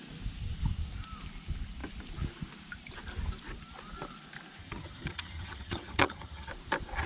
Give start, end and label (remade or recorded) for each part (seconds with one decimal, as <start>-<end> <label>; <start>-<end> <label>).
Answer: 0.0-4.6 recorded; 4.6-6.5 remade; 6.5-7.1 recorded